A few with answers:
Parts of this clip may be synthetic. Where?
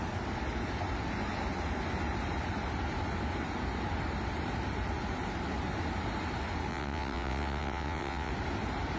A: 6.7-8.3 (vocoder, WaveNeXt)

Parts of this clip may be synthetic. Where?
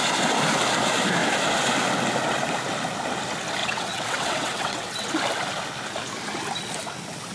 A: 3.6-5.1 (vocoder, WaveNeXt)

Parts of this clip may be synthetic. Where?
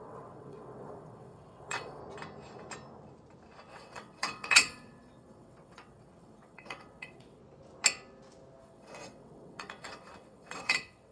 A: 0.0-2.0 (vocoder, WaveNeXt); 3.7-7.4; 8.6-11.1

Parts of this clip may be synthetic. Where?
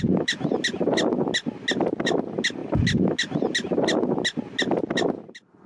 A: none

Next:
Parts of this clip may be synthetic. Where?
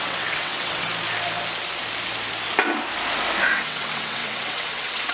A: 0.0-0.9 (vocoder, WaveNeXt); 3.5-5.1